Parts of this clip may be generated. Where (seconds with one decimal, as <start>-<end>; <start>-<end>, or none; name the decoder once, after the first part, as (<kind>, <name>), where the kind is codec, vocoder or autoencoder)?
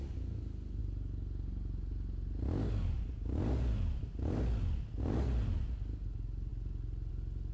none